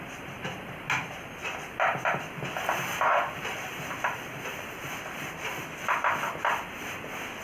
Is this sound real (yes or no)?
no